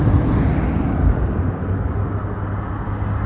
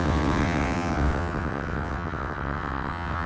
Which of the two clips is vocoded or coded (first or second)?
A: second